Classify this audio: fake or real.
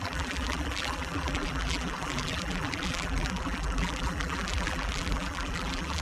fake